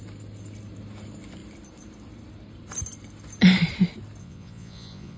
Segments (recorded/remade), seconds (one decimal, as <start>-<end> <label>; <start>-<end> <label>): 0.0-4.2 recorded; 4.2-5.2 remade